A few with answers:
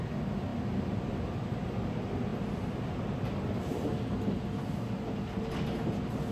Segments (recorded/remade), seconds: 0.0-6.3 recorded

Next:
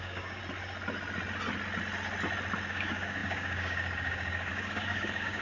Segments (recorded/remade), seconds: 0.0-0.4 remade; 0.4-2.7 recorded; 2.7-5.4 remade

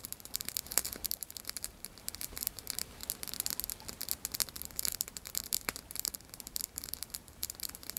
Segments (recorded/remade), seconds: 0.0-3.0 remade; 3.0-4.6 recorded; 4.6-8.0 remade

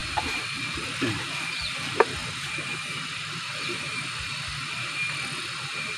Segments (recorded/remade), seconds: 0.0-1.2 remade; 1.2-2.2 recorded; 2.2-4.9 remade; 4.9-6.0 recorded

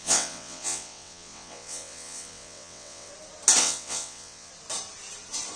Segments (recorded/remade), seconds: 0.0-3.1 remade; 3.1-3.6 recorded; 3.6-4.5 remade; 4.5-5.6 recorded

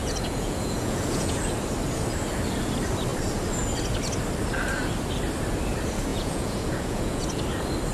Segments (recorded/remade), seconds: 0.0-1.4 remade; 1.4-6.1 recorded; 6.1-7.4 remade; 7.4-7.9 recorded